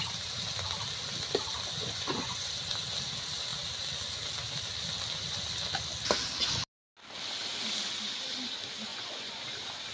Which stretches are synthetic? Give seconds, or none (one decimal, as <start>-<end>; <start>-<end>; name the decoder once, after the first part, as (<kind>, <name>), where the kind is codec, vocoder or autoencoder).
1.8-2.5 (vocoder, Vocos); 8.9-9.4